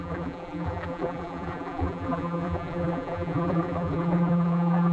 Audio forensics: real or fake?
fake